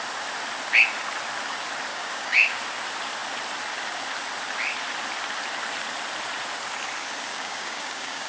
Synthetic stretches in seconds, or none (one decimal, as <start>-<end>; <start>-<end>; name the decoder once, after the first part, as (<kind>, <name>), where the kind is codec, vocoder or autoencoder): 1.9-2.6 (codec, DAC); 7.3-8.3